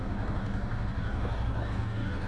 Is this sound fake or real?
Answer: fake